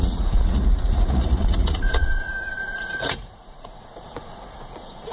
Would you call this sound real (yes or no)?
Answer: no